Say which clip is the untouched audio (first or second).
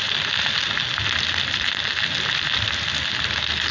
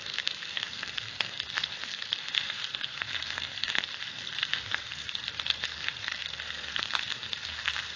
first